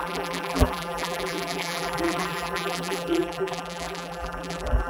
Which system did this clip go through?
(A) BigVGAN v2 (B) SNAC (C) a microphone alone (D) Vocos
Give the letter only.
A